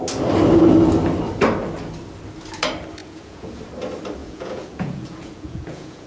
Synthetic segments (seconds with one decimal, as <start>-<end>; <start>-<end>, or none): 3.0-3.6; 4.2-6.1

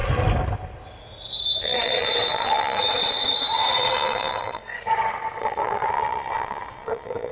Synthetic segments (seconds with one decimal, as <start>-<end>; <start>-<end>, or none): 1.6-4.6; 5.4-7.3

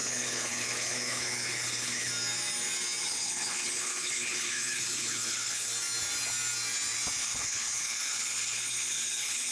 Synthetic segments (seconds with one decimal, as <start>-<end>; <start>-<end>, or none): 0.0-2.1; 3.0-5.7; 7.2-9.5

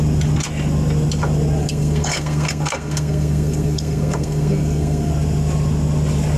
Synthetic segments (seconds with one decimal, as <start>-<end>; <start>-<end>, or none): 1.6-5.1